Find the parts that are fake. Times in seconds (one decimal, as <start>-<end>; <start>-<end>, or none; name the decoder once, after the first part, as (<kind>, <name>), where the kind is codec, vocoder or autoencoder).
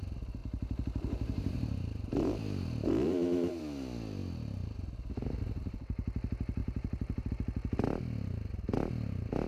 0.4-3.6 (vocoder, BigVGAN v2); 6.6-7.3